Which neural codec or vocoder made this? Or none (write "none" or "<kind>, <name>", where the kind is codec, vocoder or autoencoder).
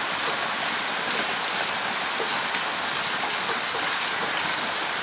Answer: none